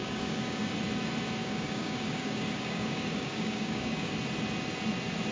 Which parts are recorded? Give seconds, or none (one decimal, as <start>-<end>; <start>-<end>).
0.7-1.4; 4.1-5.3